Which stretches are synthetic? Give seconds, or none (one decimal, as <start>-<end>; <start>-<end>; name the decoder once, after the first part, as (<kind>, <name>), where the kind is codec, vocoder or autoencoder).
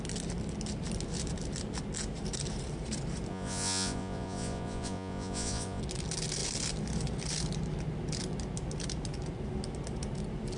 3.3-5.8 (vocoder, Vocos)